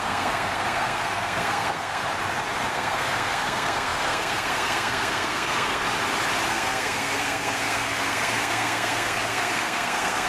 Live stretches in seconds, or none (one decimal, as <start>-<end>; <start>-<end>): 2.0-2.7; 5.8-6.5